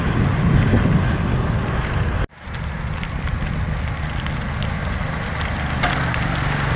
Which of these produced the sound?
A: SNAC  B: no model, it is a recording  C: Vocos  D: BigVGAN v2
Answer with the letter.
B